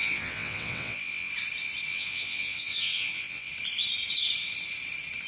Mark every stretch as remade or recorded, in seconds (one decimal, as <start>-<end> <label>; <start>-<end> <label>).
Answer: 0.0-1.3 remade; 1.3-1.9 recorded; 1.9-3.5 remade; 3.5-5.3 recorded

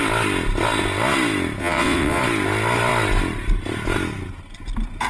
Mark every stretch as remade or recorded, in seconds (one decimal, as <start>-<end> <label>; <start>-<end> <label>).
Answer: 0.0-1.6 recorded; 1.6-2.2 remade; 2.2-5.1 recorded

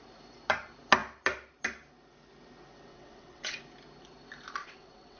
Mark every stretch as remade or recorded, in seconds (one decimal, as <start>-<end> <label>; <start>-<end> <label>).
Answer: 0.0-2.9 recorded; 2.9-3.6 remade; 3.6-4.6 recorded; 4.6-5.2 remade